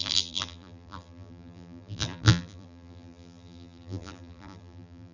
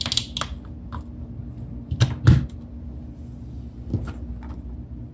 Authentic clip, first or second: second